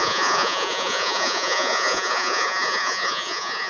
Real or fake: fake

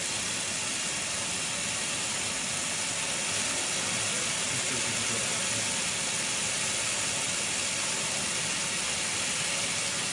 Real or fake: real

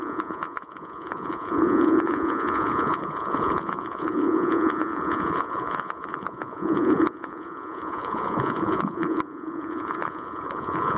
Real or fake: fake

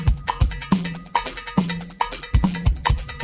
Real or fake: fake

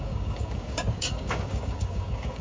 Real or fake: fake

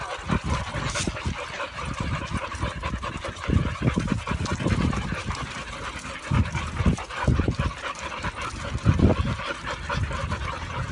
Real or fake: real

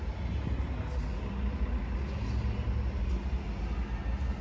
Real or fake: real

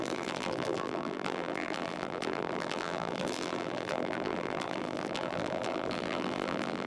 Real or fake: fake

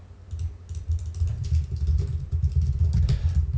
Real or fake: real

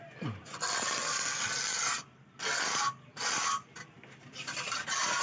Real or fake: real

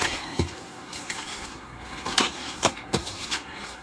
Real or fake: fake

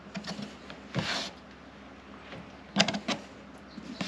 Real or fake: real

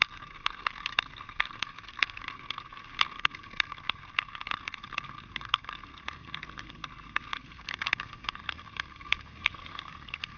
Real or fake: fake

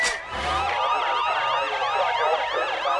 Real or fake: real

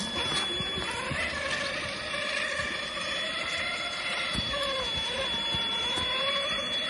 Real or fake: real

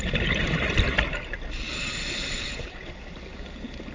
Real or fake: real